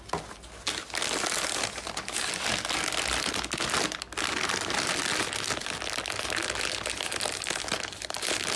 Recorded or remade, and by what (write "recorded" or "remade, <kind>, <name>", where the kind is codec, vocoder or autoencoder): recorded